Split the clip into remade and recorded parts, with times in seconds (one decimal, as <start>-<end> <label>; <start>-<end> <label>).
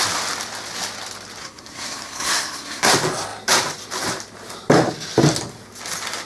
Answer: 0.0-1.4 recorded; 1.4-2.9 remade; 2.9-6.3 recorded